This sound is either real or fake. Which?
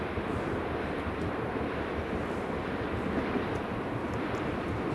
real